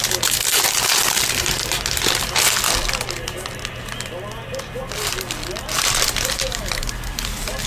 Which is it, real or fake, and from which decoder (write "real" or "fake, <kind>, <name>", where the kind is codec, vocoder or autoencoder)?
real